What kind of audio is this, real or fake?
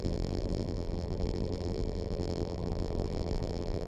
fake